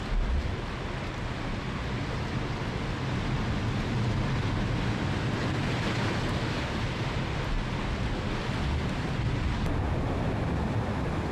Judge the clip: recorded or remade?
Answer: recorded